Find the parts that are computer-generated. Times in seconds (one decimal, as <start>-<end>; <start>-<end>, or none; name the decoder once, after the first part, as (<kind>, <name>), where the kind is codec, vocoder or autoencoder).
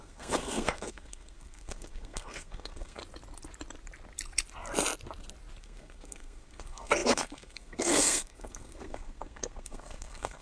0.0-3.0 (codec, SNAC); 5.6-10.4